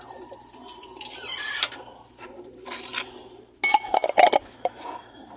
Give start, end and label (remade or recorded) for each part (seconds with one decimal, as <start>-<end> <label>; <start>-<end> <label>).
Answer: 0.0-2.9 remade; 2.9-5.0 recorded; 5.0-5.4 remade